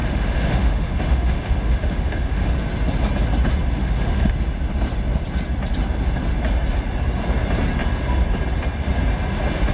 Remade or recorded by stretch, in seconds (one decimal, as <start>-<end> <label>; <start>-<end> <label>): 0.0-2.5 remade; 2.5-3.8 recorded; 3.8-4.3 remade; 4.3-9.7 recorded